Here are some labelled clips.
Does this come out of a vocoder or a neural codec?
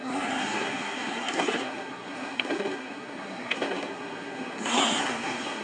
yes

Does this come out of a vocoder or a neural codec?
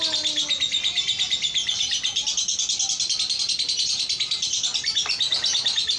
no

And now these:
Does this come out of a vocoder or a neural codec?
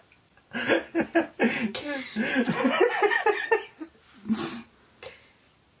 no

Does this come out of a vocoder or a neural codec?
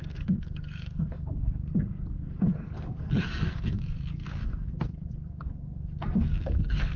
yes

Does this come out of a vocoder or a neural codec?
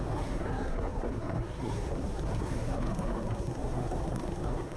yes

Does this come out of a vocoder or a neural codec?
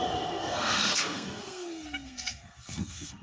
yes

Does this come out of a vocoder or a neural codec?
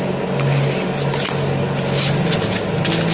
no